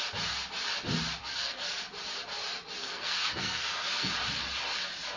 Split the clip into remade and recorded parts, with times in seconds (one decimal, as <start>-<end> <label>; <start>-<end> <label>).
0.0-1.2 recorded; 1.2-1.8 remade; 1.8-2.8 recorded; 2.8-4.1 remade; 4.1-5.2 recorded